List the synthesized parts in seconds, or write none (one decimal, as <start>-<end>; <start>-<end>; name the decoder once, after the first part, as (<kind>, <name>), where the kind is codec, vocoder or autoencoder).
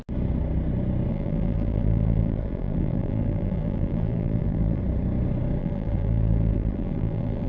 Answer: 1.1-4.8 (vocoder, BigVGAN v2); 5.6-7.5